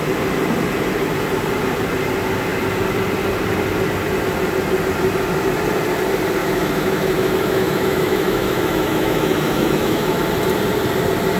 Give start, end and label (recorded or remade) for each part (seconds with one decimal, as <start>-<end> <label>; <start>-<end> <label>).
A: 0.0-6.4 recorded; 6.4-10.2 remade; 10.2-11.4 recorded